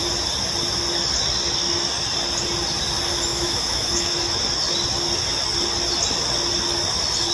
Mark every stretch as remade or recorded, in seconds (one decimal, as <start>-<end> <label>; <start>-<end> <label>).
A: 0.0-3.3 recorded; 3.3-4.1 remade; 4.1-7.3 recorded